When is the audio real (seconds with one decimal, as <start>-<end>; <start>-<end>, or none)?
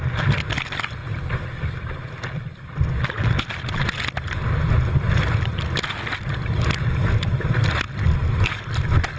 0.0-1.0; 2.7-8.2